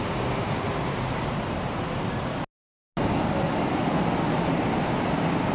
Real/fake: real